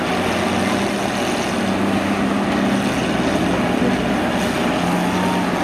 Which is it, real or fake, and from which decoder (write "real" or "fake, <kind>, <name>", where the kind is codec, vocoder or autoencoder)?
real